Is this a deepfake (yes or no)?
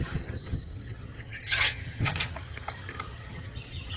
yes